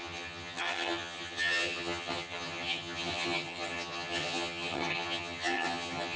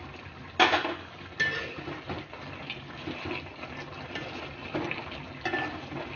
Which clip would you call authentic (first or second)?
second